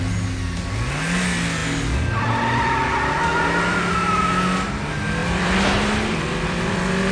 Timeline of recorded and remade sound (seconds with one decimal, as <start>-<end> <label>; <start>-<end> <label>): 0.0-5.2 recorded; 5.2-7.1 remade